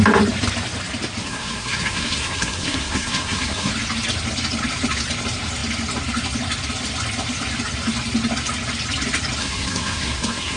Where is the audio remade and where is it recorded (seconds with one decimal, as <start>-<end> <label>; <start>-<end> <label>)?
0.0-1.2 recorded; 1.2-3.7 remade; 3.7-9.4 recorded; 9.4-10.6 remade